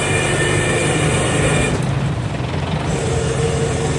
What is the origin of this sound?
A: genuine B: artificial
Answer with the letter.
A